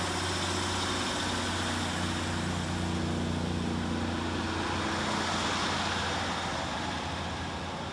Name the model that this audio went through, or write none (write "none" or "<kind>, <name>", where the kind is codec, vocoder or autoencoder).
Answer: none